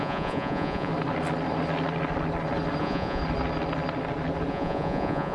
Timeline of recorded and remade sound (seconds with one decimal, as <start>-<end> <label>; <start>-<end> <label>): 0.0-0.9 remade; 0.9-2.8 recorded; 2.8-3.2 remade; 3.2-4.5 recorded; 4.5-5.3 remade